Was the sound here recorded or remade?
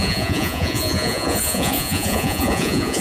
remade